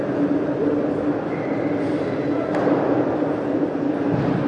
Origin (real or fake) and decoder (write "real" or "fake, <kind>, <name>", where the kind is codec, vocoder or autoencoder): real